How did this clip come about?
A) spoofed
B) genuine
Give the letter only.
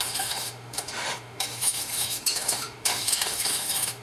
A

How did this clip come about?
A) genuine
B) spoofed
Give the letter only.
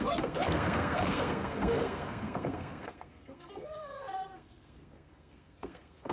B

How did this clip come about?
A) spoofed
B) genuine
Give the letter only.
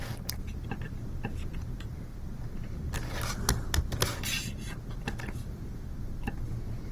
B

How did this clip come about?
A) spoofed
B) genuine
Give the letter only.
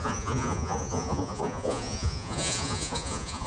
A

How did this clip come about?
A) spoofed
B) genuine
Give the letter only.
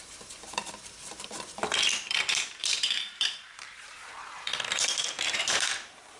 A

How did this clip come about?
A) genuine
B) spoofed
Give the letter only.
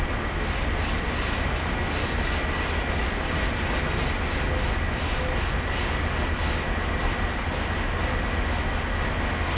A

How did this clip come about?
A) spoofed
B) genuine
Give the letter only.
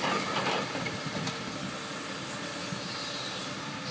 B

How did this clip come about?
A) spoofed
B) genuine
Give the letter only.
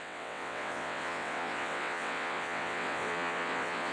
A